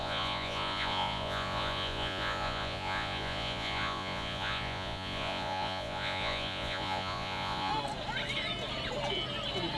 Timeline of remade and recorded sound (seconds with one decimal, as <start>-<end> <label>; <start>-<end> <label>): 0.0-7.7 remade; 7.7-9.8 recorded